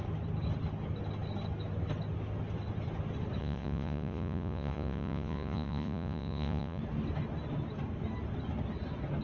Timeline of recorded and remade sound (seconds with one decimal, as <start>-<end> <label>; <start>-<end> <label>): 0.0-3.4 recorded; 3.4-6.8 remade; 6.8-9.2 recorded